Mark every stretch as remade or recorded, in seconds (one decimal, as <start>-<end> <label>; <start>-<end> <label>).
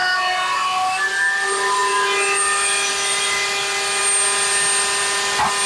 0.0-5.7 recorded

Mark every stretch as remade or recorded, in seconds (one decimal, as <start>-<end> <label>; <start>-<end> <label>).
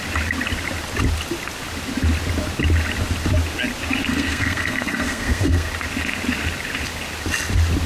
0.0-4.1 recorded; 4.1-5.7 remade; 5.7-7.9 recorded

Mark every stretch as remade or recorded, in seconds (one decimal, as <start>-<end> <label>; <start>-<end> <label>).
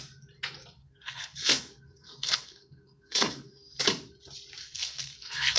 0.0-0.8 recorded; 0.8-3.8 remade; 3.8-4.6 recorded; 4.6-5.6 remade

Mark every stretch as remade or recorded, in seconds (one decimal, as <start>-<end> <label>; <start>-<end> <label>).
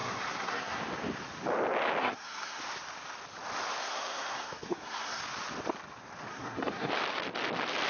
0.0-0.8 remade; 0.8-2.0 recorded; 2.0-2.6 remade; 2.6-3.8 recorded; 3.8-5.2 remade; 5.2-6.3 recorded; 6.3-6.9 remade; 6.9-7.9 recorded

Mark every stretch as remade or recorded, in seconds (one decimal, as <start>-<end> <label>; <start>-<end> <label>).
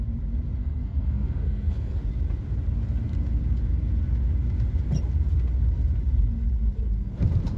0.0-0.6 recorded; 0.6-2.0 remade; 2.0-7.6 recorded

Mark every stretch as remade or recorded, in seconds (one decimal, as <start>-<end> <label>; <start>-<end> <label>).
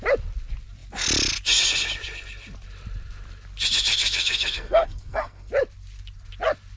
0.0-3.9 recorded; 3.9-5.5 remade; 5.5-6.8 recorded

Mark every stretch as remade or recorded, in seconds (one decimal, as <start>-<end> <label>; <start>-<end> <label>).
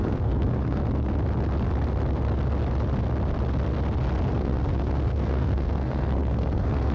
0.0-0.8 remade; 0.8-4.3 recorded; 4.3-6.9 remade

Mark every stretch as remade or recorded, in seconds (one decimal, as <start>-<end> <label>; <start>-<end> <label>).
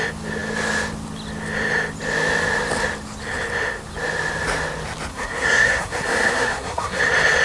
0.0-5.1 recorded; 5.1-7.0 remade; 7.0-7.4 recorded